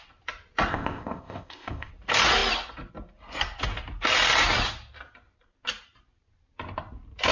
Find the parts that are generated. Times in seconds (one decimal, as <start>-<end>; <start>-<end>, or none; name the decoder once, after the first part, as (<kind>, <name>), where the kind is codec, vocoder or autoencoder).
0.7-1.9 (codec, ZipCodec)